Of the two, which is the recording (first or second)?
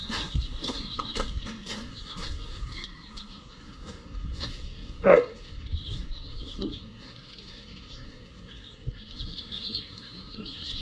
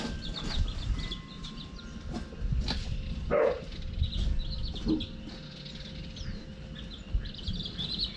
second